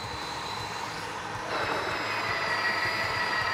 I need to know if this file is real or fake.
fake